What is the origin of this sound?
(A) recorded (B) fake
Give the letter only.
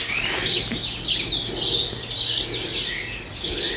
A